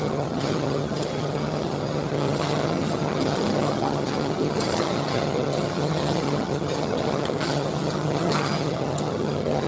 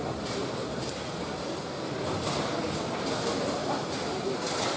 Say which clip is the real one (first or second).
second